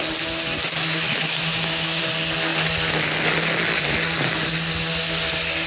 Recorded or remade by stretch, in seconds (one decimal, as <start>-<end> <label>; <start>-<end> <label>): 0.0-0.8 recorded; 0.8-2.0 remade; 2.0-5.7 recorded